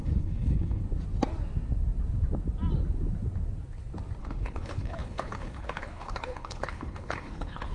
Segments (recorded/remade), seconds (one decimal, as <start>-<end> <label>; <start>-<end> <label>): 0.0-0.8 remade; 0.8-4.2 recorded; 4.2-7.7 remade